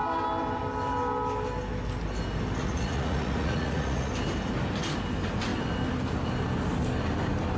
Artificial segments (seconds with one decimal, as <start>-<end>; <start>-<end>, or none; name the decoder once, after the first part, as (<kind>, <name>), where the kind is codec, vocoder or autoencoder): 2.6-4.1 (vocoder, Vocos)